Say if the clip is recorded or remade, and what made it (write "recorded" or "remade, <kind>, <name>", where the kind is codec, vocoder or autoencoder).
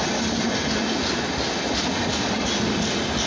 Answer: recorded